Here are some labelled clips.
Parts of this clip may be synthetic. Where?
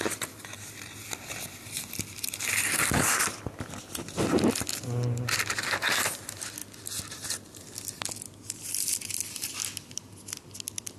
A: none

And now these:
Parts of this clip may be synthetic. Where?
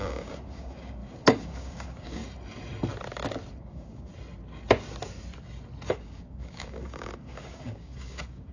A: 0.0-2.2 (codec, DAC); 3.5-4.1; 5.9-8.5